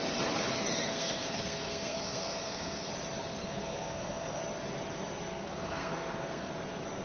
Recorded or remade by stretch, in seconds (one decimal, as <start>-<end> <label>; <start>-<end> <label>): 0.0-0.9 recorded; 0.9-2.9 remade; 2.9-3.3 recorded; 3.3-4.4 remade; 4.4-5.3 recorded; 5.3-6.5 remade; 6.5-7.0 recorded